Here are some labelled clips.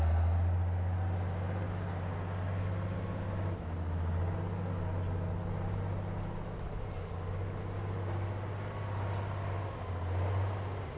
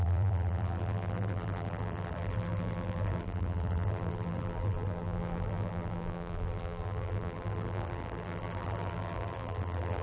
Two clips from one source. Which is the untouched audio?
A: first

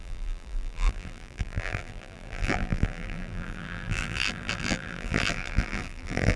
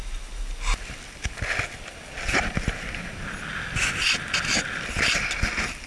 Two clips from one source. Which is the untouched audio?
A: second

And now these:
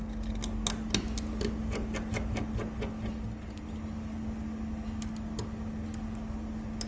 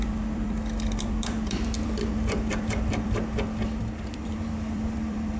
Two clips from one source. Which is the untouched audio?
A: first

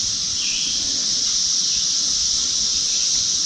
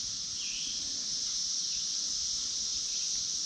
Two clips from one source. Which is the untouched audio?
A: second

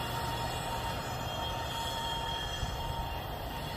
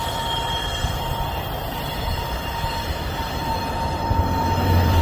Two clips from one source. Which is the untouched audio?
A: first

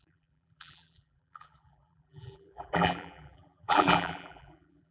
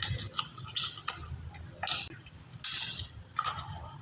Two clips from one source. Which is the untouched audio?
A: second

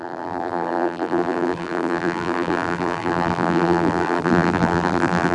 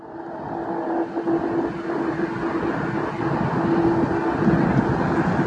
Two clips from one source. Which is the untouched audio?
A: second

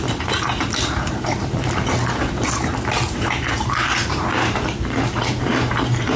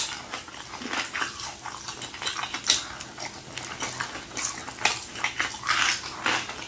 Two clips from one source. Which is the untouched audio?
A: second